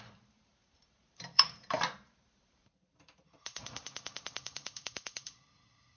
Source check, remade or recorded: remade